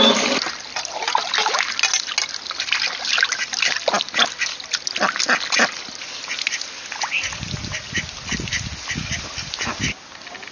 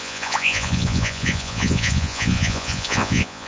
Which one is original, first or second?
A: first